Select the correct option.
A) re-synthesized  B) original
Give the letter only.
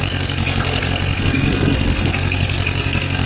A